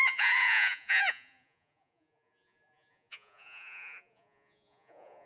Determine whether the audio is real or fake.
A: fake